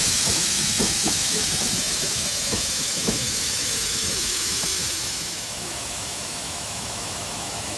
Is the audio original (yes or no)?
no